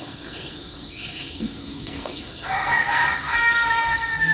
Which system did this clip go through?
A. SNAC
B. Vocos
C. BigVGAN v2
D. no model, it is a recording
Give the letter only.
A